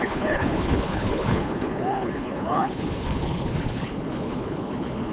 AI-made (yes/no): yes